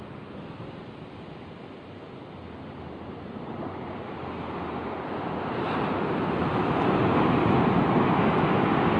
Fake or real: real